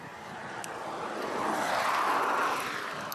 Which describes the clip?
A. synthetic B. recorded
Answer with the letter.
B